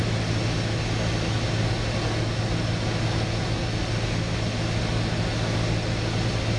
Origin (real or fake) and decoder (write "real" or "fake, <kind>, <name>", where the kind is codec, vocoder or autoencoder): real